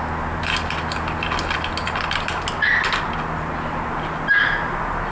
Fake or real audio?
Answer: real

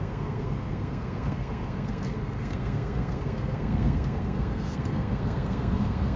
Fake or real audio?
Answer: fake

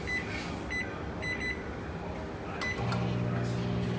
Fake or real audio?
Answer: real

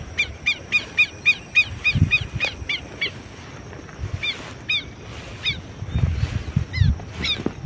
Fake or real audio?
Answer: real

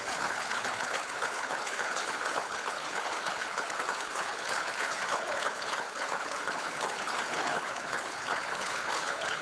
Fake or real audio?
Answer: fake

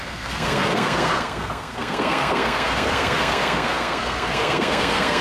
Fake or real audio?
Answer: fake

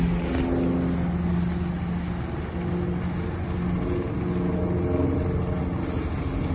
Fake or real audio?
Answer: real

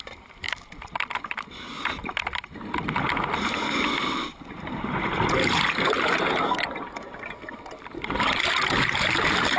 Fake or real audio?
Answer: real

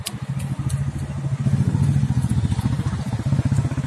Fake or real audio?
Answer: real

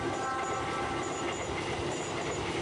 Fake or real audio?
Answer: real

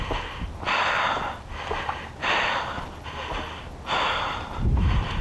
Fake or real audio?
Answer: real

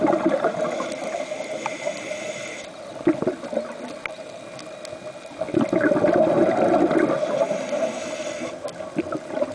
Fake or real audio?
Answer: real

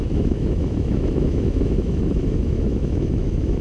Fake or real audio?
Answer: fake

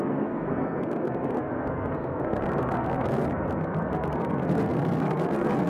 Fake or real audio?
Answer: fake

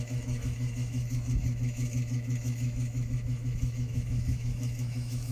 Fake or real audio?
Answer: fake